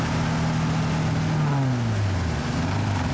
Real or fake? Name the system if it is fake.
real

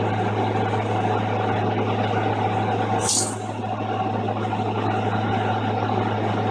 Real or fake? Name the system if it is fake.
real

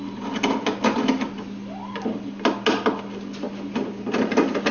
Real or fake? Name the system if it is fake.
real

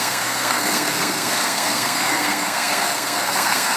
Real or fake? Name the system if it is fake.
fake, codec, SNAC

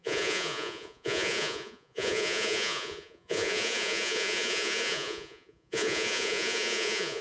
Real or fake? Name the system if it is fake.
fake, vocoder, Vocos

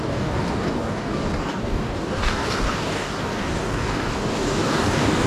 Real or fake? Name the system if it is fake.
fake, codec, DAC